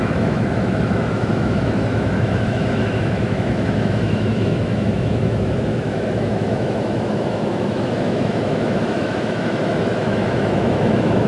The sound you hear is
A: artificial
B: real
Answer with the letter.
A